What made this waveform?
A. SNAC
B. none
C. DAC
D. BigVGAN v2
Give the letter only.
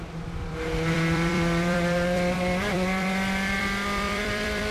D